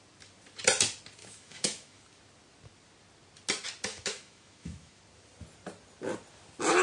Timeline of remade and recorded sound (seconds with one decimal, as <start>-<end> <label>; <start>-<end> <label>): 0.0-1.2 recorded; 1.2-2.0 remade; 2.0-3.9 recorded; 3.9-5.0 remade; 5.0-6.8 recorded